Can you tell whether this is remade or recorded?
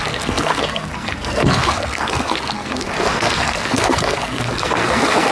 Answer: remade